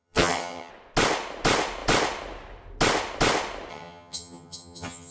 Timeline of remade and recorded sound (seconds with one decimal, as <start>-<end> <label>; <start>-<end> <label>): 0.0-0.7 remade; 0.7-3.7 recorded; 3.7-5.1 remade